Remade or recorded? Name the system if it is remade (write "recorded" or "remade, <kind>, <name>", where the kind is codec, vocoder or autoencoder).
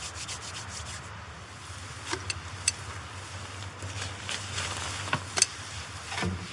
recorded